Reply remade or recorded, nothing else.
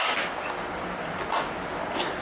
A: recorded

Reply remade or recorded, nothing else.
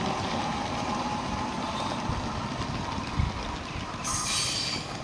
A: recorded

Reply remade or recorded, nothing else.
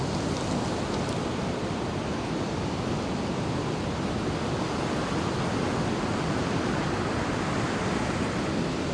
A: recorded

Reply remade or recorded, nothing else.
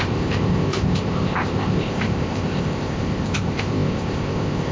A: remade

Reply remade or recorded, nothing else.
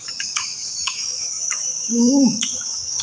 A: remade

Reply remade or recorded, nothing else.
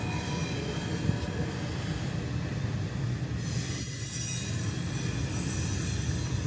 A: recorded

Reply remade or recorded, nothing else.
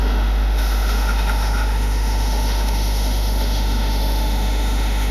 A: remade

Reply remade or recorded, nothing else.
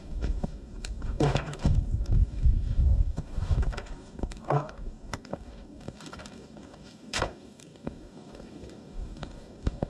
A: remade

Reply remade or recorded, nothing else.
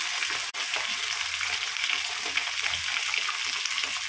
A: recorded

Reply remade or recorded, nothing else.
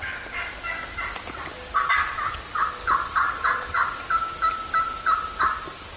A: recorded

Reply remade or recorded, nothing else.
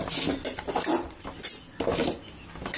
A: recorded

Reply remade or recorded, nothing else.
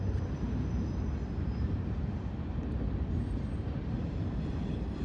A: remade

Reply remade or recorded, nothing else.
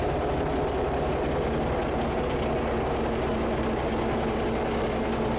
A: recorded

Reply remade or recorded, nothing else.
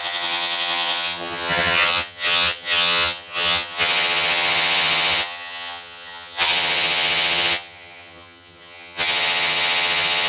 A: remade